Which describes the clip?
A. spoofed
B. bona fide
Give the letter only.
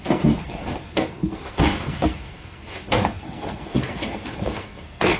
A